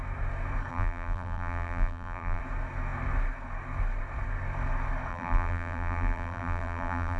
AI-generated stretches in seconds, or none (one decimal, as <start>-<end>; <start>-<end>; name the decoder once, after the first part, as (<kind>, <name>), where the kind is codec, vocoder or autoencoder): 0.7-2.4 (vocoder, BigVGAN v2); 5.1-7.2